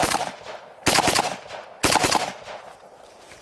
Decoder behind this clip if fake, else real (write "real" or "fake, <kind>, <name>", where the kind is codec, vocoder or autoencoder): real